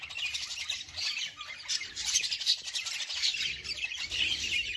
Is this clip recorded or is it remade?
remade